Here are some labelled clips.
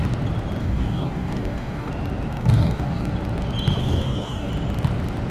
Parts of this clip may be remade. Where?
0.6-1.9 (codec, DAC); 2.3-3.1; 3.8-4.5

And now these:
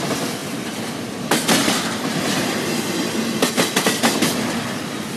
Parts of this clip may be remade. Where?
none

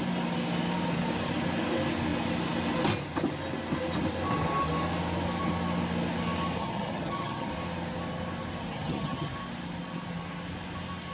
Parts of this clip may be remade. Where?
6.6-7.5 (vocoder, HiFi-GAN); 8.7-9.3

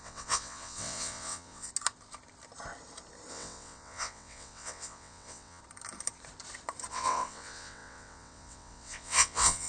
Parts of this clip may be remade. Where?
0.0-1.7 (vocoder, WaveNeXt); 3.3-5.6; 6.9-9.7

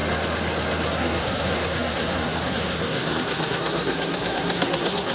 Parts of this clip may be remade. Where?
0.9-5.1 (codec, SNAC)